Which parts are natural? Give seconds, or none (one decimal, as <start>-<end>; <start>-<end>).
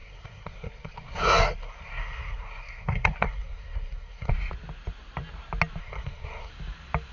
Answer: 4.3-5.8; 6.5-7.1